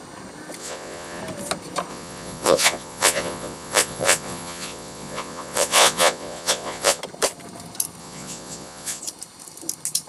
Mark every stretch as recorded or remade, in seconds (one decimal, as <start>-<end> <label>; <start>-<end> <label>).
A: 0.0-0.6 recorded; 0.6-1.2 remade; 1.2-1.9 recorded; 1.9-7.0 remade; 7.0-8.0 recorded; 8.0-9.0 remade; 9.0-10.1 recorded